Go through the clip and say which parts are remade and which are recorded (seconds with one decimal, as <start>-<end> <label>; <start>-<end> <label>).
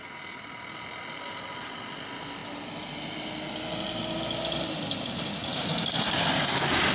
0.0-6.9 recorded